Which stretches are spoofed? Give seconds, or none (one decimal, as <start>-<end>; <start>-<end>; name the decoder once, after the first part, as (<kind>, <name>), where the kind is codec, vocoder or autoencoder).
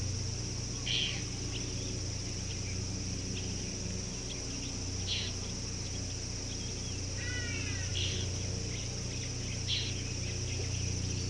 7.9-8.5 (vocoder, BigVGAN v2)